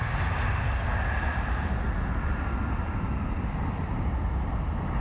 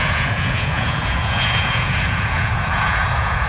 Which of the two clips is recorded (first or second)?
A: first